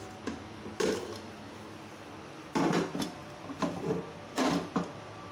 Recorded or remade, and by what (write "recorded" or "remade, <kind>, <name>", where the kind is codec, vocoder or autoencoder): recorded